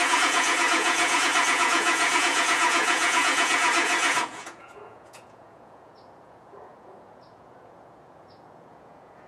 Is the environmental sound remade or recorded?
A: remade